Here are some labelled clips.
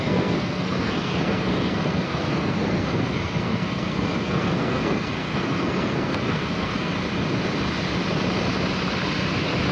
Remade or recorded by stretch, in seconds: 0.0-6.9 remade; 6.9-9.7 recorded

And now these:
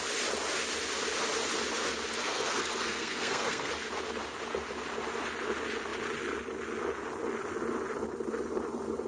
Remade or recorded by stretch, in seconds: 0.0-2.1 recorded; 2.1-3.7 remade; 3.7-9.1 recorded

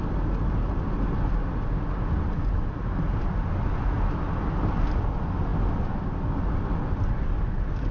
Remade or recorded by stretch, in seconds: 0.0-7.9 recorded